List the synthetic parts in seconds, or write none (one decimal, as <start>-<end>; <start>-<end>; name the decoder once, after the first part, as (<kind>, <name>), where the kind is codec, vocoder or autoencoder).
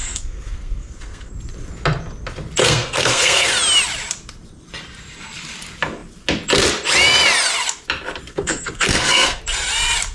0.0-1.3 (codec, SNAC); 2.6-3.5; 8.3-9.4